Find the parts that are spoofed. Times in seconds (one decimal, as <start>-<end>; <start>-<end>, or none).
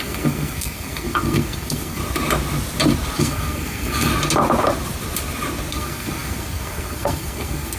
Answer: 0.0-2.0; 3.2-4.1; 5.7-7.8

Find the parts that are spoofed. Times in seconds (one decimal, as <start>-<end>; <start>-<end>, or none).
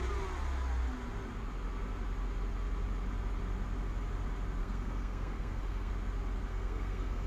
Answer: 4.6-5.9; 6.5-7.3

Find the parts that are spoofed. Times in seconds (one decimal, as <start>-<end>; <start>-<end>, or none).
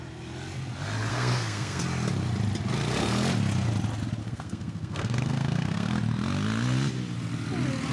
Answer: 1.1-1.8; 4.2-5.9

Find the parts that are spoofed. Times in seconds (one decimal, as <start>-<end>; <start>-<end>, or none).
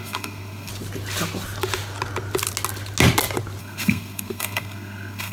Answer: 0.0-0.7; 3.6-5.3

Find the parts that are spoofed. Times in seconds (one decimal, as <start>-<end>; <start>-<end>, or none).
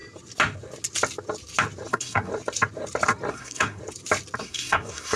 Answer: 1.9-2.3; 3.3-3.8; 4.4-5.2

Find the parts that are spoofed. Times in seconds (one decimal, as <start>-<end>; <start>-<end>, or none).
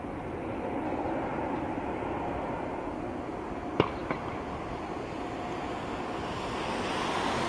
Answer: none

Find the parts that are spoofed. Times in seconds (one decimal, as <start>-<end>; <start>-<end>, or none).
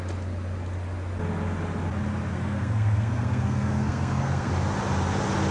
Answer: 2.3-4.5